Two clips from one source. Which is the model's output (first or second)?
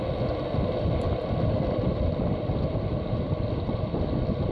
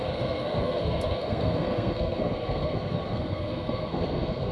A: second